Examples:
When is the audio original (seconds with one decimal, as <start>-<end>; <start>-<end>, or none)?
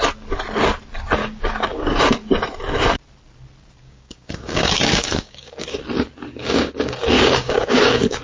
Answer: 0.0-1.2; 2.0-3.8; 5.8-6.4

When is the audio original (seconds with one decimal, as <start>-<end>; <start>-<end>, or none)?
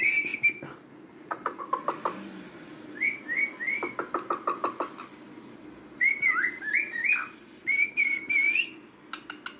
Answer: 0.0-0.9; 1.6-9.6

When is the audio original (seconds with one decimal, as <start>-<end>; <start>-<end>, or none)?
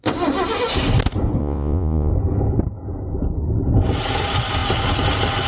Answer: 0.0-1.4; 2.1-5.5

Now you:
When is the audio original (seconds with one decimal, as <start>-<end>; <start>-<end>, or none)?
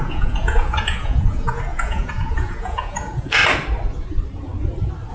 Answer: 3.4-5.1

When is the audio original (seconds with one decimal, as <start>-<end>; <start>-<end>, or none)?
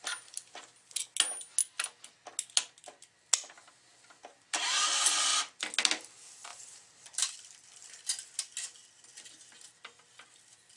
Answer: 0.0-6.5; 7.2-10.8